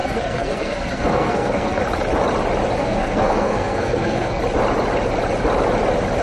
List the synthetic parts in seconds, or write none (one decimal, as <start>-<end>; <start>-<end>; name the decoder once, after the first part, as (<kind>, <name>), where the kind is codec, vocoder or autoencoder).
0.0-1.8 (codec, SNAC); 2.8-4.4